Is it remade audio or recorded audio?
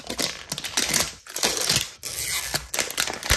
recorded